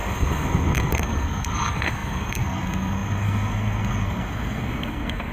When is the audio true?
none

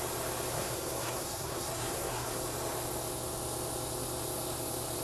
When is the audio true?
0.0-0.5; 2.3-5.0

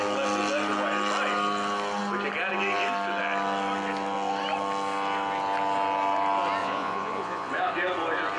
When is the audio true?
0.0-6.6; 7.5-8.4

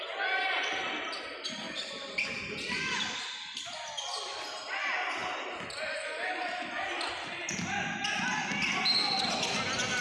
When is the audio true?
0.0-10.0

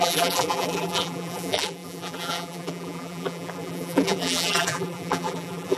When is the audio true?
none

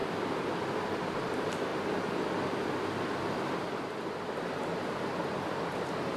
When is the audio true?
0.0-6.2

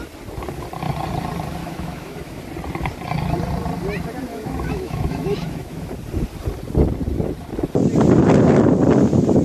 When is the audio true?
0.0-1.6; 2.4-4.3; 5.9-9.4